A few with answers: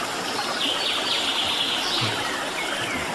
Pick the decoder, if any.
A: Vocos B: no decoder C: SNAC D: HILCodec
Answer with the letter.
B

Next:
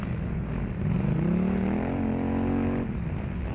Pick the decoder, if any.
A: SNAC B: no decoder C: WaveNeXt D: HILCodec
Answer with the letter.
B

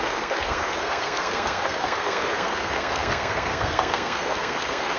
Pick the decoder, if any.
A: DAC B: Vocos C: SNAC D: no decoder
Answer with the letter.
C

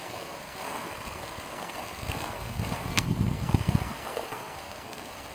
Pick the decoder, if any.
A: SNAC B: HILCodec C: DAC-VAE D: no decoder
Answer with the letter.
A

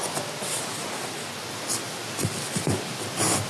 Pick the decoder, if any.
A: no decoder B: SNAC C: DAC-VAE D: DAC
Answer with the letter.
A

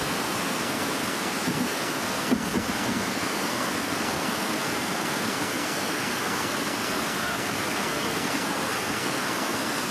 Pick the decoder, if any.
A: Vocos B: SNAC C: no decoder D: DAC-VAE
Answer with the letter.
B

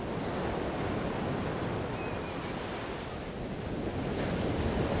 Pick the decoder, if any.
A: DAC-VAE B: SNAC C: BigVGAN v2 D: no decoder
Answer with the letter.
D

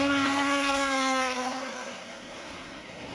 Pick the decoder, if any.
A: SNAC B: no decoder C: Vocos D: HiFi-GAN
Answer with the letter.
A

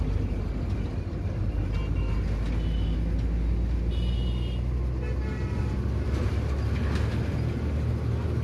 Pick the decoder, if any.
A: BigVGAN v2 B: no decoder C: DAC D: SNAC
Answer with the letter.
B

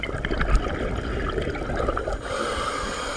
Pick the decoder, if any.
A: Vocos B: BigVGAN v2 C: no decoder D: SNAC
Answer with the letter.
C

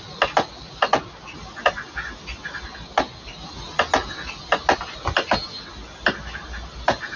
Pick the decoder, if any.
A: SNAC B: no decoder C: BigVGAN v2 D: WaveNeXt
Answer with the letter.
B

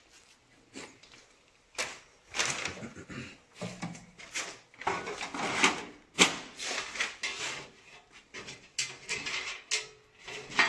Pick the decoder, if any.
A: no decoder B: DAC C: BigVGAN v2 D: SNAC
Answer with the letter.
A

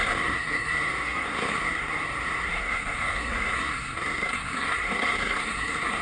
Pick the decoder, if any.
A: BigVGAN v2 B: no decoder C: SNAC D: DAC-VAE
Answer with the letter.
C